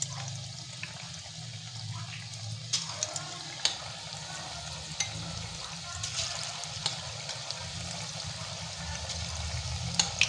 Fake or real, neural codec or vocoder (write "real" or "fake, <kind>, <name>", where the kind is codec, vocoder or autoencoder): real